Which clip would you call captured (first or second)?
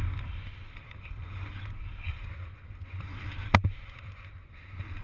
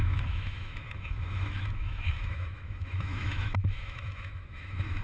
first